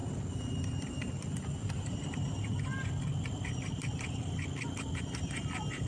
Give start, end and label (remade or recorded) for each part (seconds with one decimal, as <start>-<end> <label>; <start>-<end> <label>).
0.0-1.6 recorded; 1.6-2.5 remade; 2.5-5.9 recorded